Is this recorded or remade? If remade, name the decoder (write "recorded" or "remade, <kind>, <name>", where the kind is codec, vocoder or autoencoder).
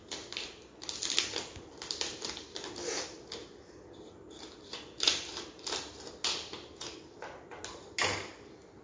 recorded